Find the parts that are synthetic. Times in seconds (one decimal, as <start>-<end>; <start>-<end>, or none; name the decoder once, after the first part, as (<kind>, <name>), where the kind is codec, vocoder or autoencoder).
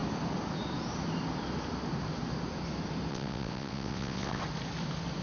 3.1-4.4 (vocoder, WaveNeXt)